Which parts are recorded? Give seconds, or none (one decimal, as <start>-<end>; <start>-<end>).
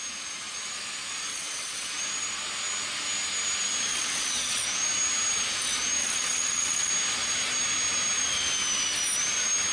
0.0-1.3; 1.9-3.9; 4.6-6.0; 6.9-9.7